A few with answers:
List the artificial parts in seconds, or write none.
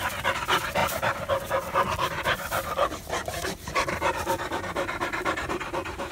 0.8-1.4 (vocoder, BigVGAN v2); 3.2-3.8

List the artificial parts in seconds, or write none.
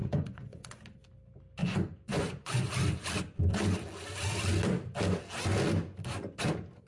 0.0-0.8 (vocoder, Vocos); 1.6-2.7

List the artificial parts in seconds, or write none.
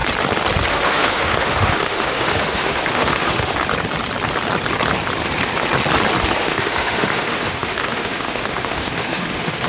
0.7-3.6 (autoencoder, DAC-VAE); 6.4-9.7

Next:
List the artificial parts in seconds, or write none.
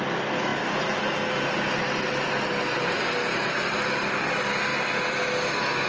none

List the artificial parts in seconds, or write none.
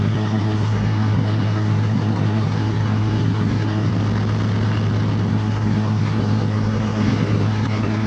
0.0-3.9 (codec, SNAC); 5.3-8.1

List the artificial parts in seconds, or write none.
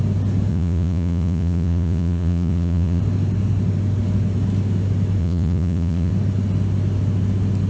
0.5-3.0 (vocoder, Vocos); 5.2-6.1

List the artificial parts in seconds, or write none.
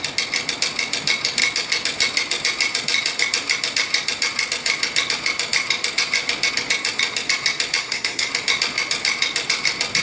7.8-8.3 (codec, SNAC)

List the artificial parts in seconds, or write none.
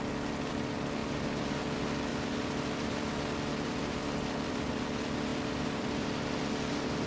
1.0-1.6 (vocoder, BigVGAN v2); 2.1-3.1; 3.5-4.7; 5.3-6.2